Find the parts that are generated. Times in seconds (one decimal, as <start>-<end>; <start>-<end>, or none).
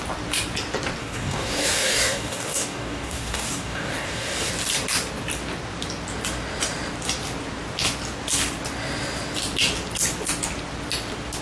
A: 1.0-4.5